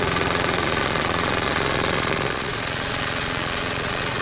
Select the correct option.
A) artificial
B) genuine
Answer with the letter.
A